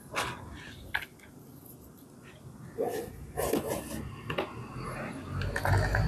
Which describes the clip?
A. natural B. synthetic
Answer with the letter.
A